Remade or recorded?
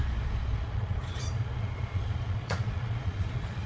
remade